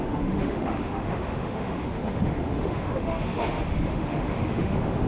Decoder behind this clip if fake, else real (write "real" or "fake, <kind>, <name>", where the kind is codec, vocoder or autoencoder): fake, autoencoder, DAC-VAE